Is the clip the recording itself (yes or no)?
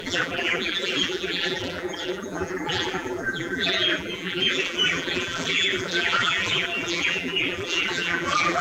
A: no